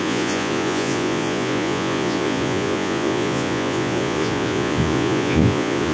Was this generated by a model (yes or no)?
yes